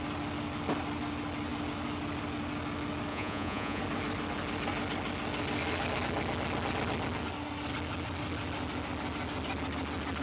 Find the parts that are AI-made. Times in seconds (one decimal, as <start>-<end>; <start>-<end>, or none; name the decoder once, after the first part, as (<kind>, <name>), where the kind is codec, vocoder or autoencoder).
3.1-3.8 (vocoder, Vocos)